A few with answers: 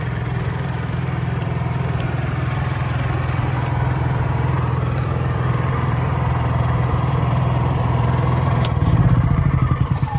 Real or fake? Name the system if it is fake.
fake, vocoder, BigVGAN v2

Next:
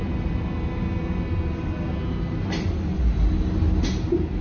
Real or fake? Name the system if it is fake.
real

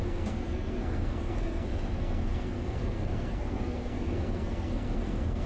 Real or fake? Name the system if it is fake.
fake, codec, SNAC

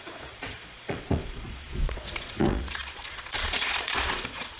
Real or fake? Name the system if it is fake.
fake, vocoder, Vocos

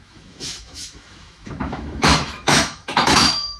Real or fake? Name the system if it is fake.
fake, autoencoder, DAC-VAE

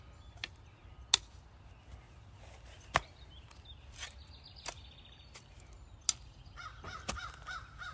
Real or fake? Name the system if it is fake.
real